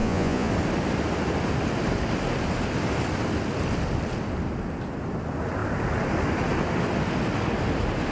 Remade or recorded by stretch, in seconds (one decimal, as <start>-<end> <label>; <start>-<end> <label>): 0.0-0.5 remade; 0.5-8.1 recorded